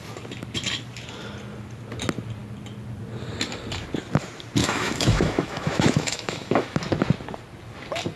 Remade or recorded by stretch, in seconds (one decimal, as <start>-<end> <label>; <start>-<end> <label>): 0.0-4.6 recorded; 4.6-6.8 remade; 6.8-8.2 recorded